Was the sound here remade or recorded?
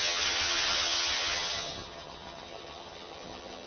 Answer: remade